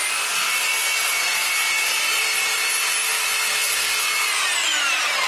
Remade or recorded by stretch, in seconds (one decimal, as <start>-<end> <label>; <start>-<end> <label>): 0.0-5.3 recorded